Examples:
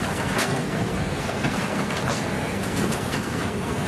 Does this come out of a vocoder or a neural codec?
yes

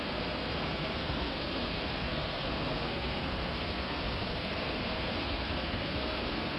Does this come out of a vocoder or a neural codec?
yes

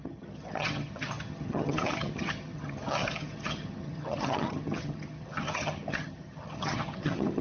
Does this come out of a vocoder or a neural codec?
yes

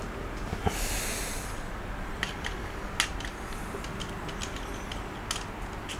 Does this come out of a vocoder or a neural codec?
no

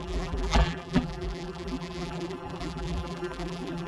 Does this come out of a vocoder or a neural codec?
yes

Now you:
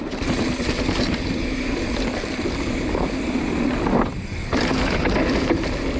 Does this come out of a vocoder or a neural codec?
no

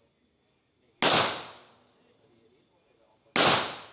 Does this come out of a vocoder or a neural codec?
no